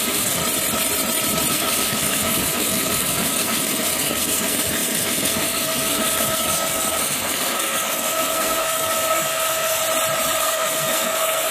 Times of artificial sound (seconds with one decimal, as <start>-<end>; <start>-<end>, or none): 0.0-0.4; 1.5-9.8; 10.4-11.5